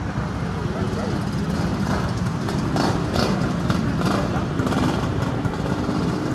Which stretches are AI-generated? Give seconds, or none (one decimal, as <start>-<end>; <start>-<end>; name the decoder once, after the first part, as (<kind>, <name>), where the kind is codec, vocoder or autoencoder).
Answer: 1.7-5.5 (vocoder, BigVGAN v2)